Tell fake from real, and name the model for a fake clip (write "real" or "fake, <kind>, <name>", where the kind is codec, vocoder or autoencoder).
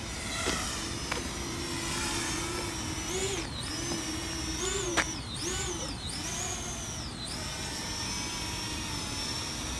real